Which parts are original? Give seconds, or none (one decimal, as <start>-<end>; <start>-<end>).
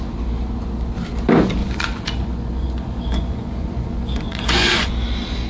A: 0.0-1.6; 4.9-5.5